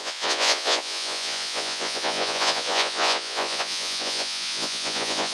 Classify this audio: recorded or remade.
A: remade